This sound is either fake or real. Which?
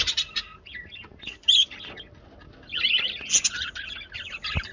real